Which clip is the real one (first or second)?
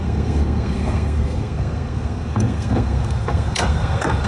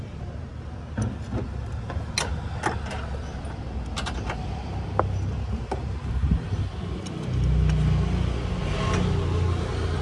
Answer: second